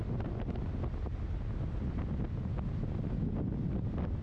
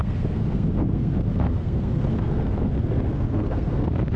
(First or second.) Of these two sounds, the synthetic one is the second